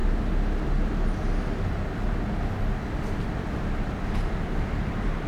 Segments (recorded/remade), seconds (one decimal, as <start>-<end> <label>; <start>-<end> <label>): 0.0-3.2 recorded; 3.2-5.3 remade